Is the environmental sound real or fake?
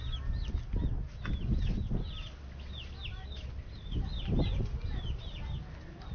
real